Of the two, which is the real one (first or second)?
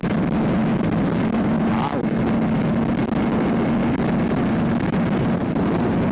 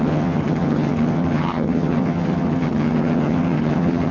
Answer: first